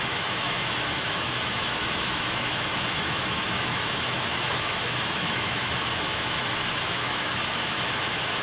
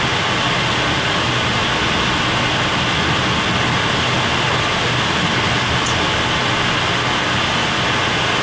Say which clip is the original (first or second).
second